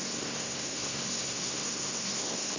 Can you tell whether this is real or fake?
fake